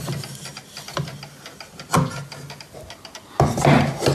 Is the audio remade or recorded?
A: recorded